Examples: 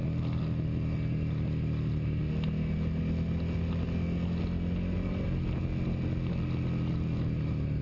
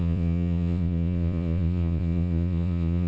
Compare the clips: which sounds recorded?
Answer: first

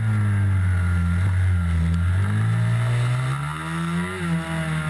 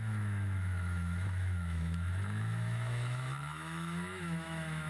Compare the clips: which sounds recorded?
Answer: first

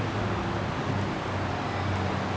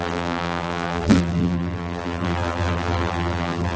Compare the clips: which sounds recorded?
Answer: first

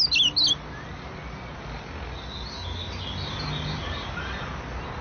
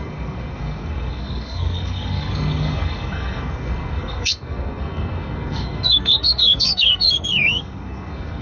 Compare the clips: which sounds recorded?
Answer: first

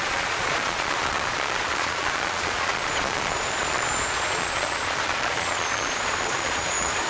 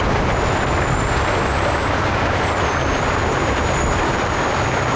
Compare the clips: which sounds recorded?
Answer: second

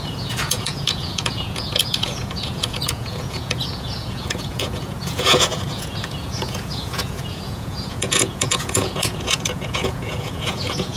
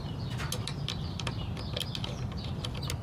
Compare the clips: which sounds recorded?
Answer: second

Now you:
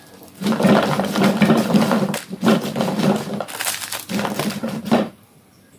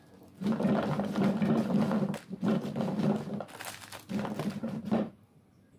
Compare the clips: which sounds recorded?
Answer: second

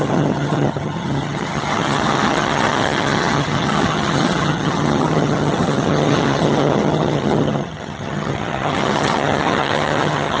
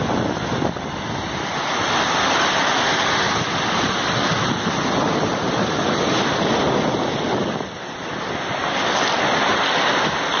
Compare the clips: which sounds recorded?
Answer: second